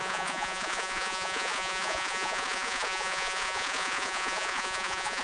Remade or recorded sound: remade